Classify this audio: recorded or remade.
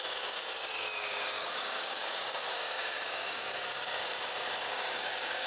remade